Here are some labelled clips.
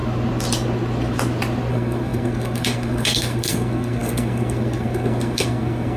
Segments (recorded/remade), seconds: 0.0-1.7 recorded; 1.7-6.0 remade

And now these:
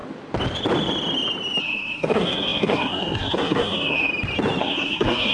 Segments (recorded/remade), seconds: 0.0-1.6 recorded; 1.6-4.1 remade; 4.1-4.6 recorded; 4.6-5.3 remade

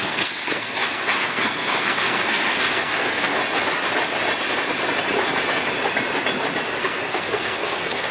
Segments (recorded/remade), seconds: 0.0-3.4 remade; 3.4-6.8 recorded; 6.8-8.1 remade

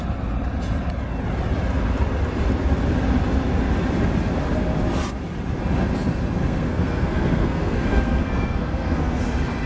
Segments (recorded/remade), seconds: 0.0-6.4 recorded; 6.4-9.2 remade; 9.2-9.7 recorded

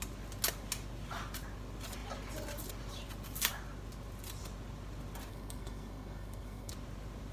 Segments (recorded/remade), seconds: 0.0-5.3 recorded; 5.3-6.7 remade; 6.7-7.3 recorded

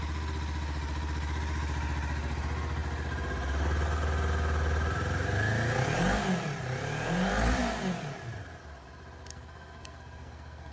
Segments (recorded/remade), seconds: 0.0-9.3 recorded; 9.3-10.7 remade